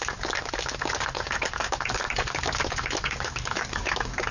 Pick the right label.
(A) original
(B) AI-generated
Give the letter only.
B